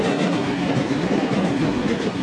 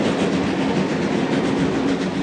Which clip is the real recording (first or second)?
second